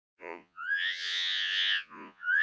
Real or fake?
fake